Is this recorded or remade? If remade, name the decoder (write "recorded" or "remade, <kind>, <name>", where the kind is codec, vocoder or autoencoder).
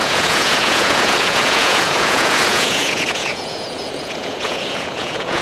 remade, vocoder, Vocos